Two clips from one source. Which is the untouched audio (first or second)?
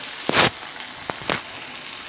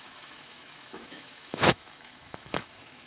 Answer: first